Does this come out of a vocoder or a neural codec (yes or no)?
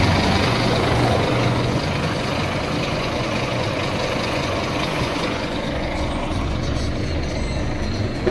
yes